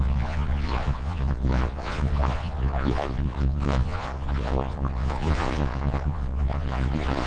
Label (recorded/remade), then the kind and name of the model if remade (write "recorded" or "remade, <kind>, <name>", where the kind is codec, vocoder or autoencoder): remade, vocoder, Vocos